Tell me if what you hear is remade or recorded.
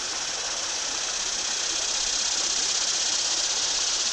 recorded